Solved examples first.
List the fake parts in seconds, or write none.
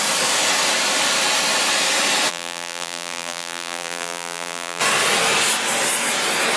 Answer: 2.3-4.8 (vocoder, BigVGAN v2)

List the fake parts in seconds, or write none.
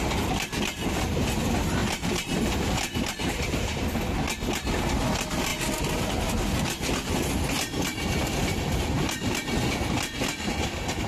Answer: 1.8-4.0 (vocoder, BigVGAN v2)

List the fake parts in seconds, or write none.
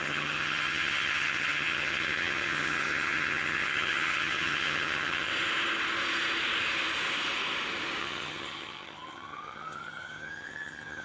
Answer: 0.0-5.3 (vocoder, HiFi-GAN); 8.0-11.0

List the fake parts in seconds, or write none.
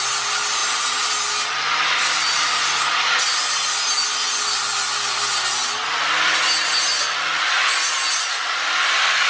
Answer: none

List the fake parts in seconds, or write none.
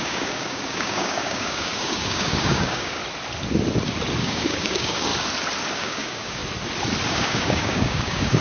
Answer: 0.0-3.0 (codec, DAC); 4.2-5.1; 5.7-6.4; 7.1-8.4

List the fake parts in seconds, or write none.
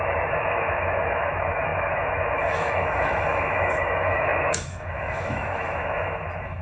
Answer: 0.0-6.6 (autoencoder, DAC-VAE)